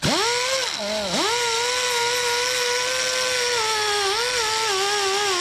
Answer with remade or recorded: recorded